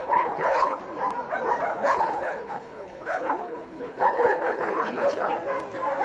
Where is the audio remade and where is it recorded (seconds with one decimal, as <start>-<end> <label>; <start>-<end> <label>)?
0.0-0.8 remade; 0.8-1.7 recorded; 1.7-5.3 remade; 5.3-6.0 recorded